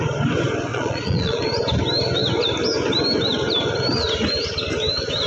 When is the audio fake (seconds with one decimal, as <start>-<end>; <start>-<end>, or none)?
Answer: 0.7-1.4

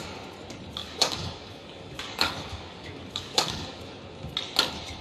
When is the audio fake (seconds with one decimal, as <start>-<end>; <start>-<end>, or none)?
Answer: 0.8-3.8